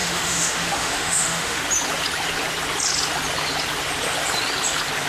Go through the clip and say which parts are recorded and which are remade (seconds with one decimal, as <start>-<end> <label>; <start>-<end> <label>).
0.0-1.6 remade; 1.6-5.1 recorded